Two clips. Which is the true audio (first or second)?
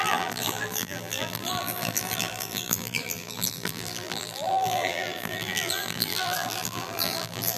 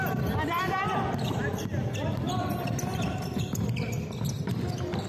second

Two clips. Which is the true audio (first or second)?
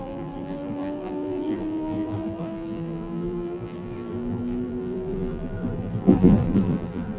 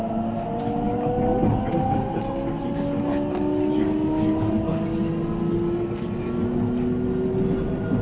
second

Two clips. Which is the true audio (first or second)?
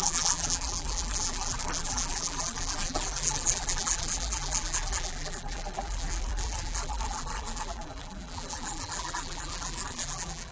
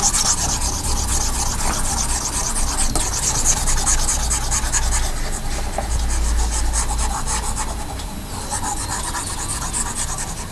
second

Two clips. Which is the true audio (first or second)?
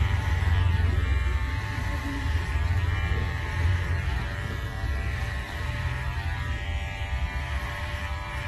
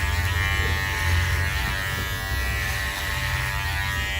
second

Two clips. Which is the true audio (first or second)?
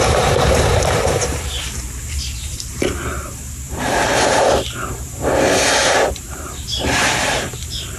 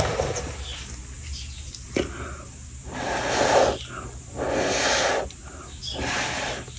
second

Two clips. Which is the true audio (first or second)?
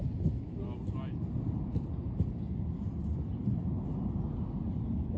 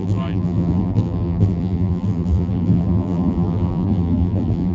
first